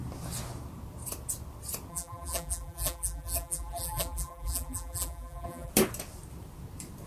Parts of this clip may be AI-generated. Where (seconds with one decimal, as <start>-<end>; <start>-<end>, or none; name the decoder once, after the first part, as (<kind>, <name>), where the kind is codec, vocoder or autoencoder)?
1.9-5.7 (vocoder, BigVGAN v2)